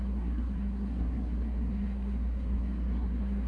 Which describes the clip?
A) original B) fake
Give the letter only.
B